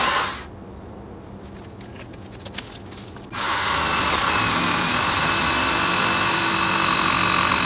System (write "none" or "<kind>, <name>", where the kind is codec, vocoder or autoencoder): none